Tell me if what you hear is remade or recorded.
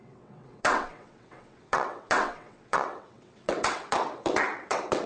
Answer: remade